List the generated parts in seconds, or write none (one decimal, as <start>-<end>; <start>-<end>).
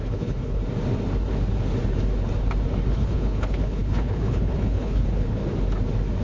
0.0-0.6; 2.9-5.4